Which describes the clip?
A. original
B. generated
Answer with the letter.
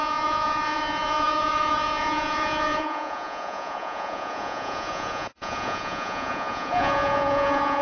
B